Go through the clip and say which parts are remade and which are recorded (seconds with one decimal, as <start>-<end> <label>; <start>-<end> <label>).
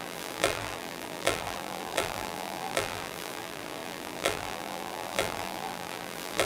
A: 0.0-6.5 remade